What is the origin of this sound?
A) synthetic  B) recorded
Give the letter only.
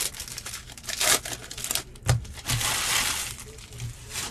B